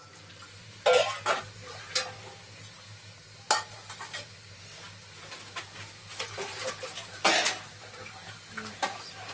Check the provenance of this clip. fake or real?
real